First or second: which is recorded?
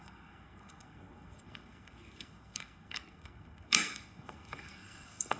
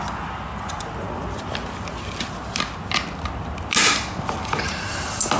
second